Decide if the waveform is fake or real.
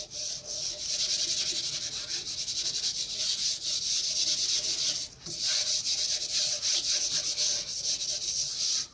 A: real